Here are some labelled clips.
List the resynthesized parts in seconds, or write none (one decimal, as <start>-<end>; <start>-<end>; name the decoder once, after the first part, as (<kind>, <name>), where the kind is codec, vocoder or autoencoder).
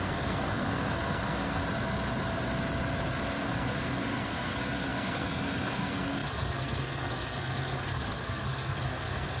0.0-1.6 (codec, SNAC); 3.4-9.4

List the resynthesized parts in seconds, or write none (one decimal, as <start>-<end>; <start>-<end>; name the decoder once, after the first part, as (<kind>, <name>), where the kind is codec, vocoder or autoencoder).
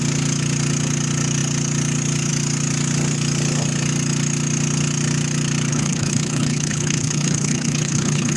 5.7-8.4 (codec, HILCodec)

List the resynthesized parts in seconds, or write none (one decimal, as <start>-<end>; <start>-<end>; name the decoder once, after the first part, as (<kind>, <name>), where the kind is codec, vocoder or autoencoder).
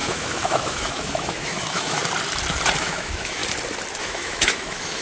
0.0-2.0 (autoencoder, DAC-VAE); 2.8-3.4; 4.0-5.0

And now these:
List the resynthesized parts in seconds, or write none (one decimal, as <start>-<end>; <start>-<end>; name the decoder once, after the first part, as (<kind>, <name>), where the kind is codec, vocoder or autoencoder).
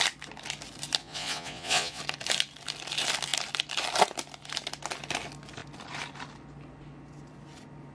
1.0-2.0 (vocoder, Vocos)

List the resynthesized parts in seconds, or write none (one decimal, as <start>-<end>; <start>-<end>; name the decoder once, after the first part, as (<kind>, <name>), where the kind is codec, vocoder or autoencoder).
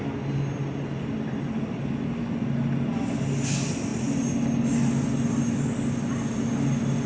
none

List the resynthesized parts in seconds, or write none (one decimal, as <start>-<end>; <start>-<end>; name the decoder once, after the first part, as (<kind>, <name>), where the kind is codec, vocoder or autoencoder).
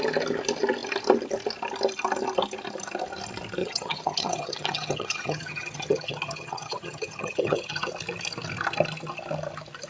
3.6-7.9 (vocoder, HiFi-GAN)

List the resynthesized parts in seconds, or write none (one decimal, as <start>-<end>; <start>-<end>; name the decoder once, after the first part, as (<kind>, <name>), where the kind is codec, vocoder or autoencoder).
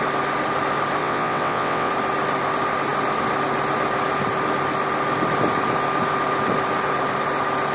1.0-1.9 (vocoder, WaveNeXt)